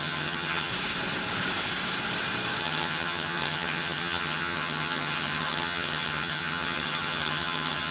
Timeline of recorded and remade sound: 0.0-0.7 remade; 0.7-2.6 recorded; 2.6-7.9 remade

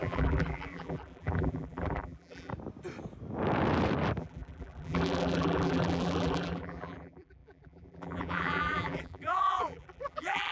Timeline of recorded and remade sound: 0.0-2.5 remade; 2.5-4.2 recorded; 4.2-10.5 remade

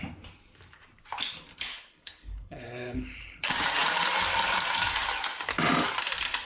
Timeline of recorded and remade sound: 0.0-1.5 recorded; 1.5-3.4 remade; 3.4-6.4 recorded